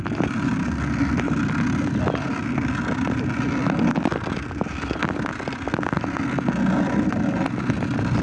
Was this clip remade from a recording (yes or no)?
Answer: no